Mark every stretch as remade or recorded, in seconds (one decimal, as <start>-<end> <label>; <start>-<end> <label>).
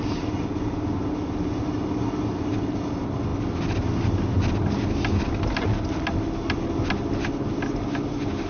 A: 0.0-8.5 recorded